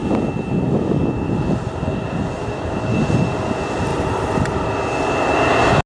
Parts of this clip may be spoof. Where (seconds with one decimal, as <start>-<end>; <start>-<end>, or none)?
none